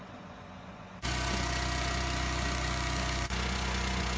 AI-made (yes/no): yes